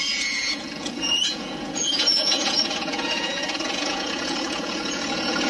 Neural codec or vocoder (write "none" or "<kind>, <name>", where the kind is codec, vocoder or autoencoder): vocoder, Vocos